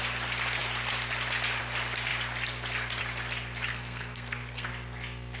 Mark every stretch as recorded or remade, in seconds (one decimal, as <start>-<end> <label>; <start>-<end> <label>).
0.0-3.7 recorded; 3.7-4.7 remade; 4.7-5.4 recorded